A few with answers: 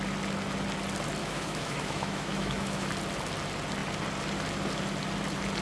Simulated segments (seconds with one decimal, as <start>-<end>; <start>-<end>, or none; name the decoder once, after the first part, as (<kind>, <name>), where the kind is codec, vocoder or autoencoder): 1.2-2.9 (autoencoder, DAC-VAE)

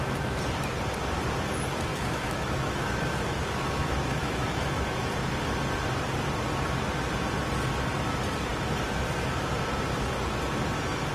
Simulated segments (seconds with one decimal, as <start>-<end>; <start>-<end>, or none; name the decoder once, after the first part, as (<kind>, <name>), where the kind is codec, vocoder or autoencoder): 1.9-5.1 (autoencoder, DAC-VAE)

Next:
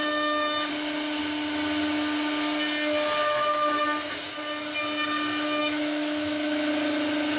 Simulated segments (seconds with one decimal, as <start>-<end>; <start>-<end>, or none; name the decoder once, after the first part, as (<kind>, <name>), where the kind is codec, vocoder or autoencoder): 0.0-0.7 (autoencoder, DAC-VAE); 5.6-6.7

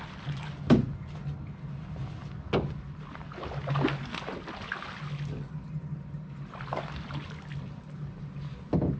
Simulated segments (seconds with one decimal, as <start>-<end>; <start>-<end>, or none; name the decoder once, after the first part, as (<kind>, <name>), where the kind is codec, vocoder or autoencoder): none

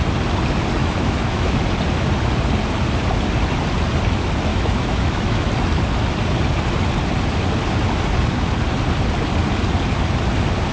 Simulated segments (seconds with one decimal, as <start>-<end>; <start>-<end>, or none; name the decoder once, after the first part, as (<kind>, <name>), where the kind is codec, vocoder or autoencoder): 0.8-1.6 (autoencoder, DAC-VAE); 4.5-5.5

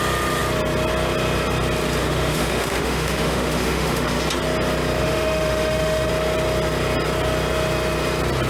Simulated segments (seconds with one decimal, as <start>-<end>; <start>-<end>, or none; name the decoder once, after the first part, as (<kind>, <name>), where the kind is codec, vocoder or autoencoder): 2.0-4.2 (autoencoder, DAC-VAE); 5.0-6.1

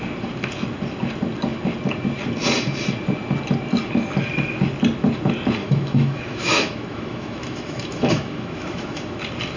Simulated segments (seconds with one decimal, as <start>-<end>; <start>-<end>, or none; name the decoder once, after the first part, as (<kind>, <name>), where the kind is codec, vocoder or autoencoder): 5.6-9.2 (autoencoder, DAC-VAE)

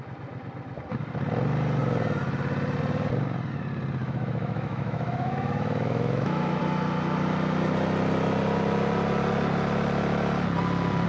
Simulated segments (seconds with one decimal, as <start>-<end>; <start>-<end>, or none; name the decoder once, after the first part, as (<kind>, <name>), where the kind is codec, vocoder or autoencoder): 4.0-6.6 (autoencoder, DAC-VAE)